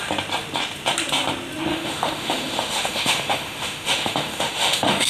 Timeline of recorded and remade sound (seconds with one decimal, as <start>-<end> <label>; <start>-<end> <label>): 0.0-1.7 recorded; 1.7-5.1 remade